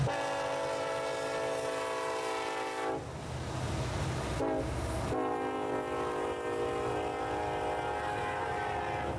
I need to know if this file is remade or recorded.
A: recorded